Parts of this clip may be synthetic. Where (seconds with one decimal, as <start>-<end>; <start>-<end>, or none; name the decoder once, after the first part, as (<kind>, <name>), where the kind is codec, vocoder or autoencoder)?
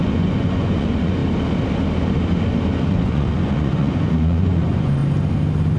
0.0-1.2 (vocoder, Vocos); 2.8-5.0